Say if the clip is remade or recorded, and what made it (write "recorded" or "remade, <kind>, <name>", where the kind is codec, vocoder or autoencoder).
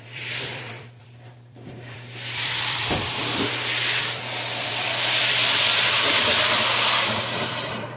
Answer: remade, vocoder, BigVGAN v2